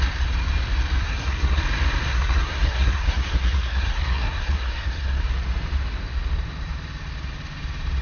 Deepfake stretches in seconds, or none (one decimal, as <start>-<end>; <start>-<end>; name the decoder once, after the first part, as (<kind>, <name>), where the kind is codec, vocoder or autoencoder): 1.0-1.6 (codec, SNAC); 2.1-5.2